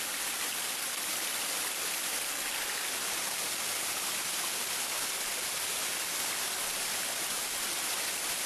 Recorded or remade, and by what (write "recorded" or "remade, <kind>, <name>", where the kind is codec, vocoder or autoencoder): recorded